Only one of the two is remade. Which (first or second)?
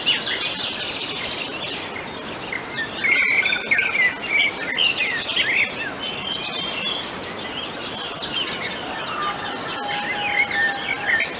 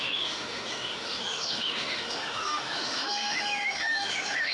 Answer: second